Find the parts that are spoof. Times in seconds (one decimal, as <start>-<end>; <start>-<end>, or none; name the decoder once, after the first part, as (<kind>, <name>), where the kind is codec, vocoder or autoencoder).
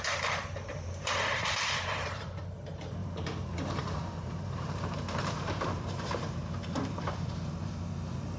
0.7-2.4 (vocoder, BigVGAN v2); 3.0-7.9